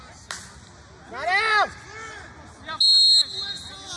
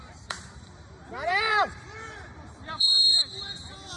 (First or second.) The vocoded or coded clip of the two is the second